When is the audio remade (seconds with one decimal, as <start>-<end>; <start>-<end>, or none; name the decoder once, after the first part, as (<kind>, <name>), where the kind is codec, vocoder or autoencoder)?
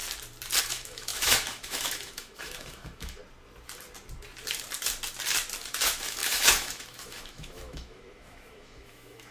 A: 0.6-3.2 (autoencoder, DAC-VAE); 5.7-9.3